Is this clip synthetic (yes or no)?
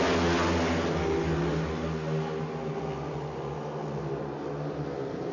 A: no